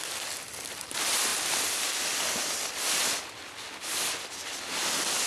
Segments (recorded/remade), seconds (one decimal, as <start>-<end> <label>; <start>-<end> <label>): 0.0-5.3 recorded